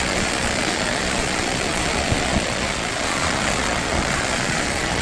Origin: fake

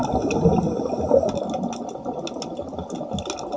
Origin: real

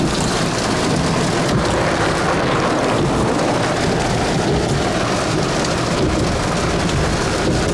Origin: real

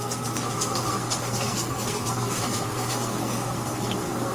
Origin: fake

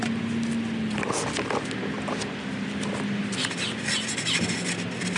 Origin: real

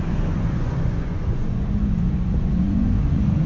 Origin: fake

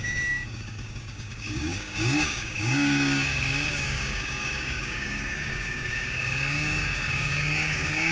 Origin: fake